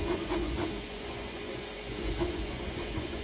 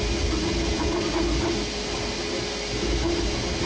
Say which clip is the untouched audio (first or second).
second